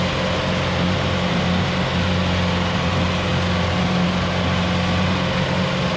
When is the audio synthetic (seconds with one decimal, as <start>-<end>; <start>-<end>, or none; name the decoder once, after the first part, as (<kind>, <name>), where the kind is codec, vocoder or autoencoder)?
none